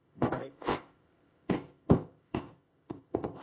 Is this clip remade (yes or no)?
yes